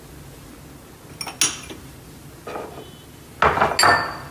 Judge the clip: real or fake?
real